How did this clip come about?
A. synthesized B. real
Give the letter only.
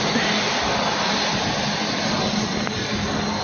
B